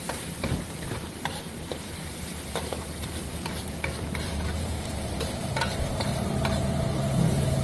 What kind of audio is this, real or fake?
fake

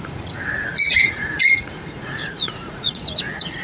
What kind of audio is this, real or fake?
fake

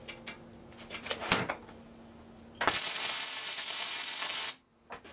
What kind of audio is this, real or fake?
real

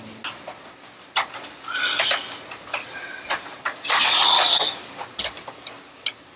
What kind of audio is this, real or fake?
real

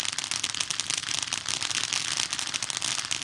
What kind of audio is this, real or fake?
real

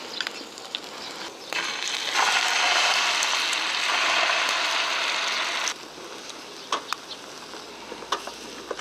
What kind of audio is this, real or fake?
real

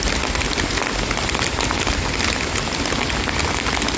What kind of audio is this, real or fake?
real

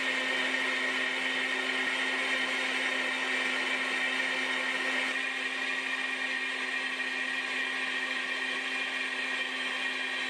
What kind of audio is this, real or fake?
real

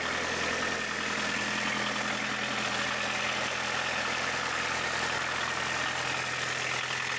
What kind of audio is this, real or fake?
real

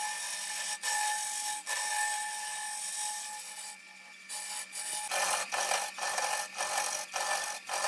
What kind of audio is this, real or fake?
real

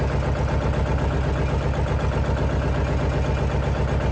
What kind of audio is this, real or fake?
real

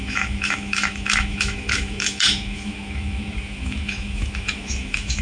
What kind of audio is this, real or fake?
fake